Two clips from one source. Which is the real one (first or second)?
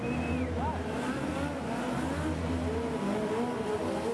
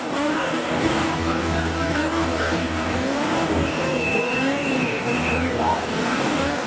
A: first